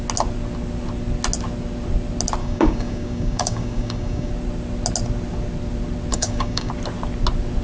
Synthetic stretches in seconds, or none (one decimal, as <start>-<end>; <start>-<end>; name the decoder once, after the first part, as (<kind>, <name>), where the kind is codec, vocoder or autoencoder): 2.4-4.3 (codec, DAC); 6.1-6.7